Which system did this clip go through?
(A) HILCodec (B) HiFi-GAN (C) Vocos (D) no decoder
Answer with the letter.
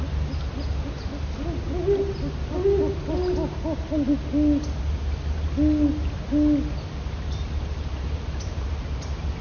D